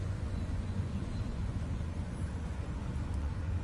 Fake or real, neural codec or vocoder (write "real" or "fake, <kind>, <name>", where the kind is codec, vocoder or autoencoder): fake, vocoder, Vocos